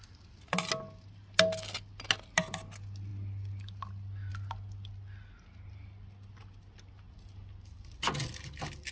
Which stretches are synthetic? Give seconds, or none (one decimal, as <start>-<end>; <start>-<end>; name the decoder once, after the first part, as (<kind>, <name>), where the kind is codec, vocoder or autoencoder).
none

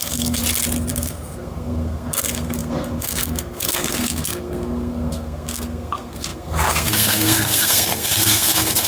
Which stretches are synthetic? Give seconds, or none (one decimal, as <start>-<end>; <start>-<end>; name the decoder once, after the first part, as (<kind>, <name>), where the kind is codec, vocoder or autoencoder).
0.0-0.4 (codec, SNAC); 0.9-8.9

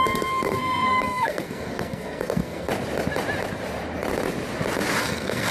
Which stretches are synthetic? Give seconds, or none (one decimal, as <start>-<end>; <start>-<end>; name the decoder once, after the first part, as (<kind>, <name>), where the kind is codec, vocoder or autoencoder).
0.0-2.7 (codec, SNAC); 5.0-5.5

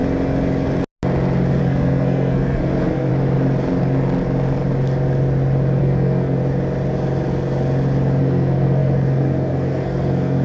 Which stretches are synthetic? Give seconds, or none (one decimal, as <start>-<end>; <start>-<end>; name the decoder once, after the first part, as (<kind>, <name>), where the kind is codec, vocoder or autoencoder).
1.6-3.1 (codec, SNAC); 5.8-6.4; 8.2-10.4